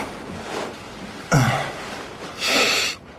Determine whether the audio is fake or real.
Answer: real